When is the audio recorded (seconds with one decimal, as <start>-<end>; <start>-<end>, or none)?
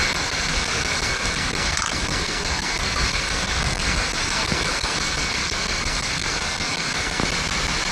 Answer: 7.2-7.9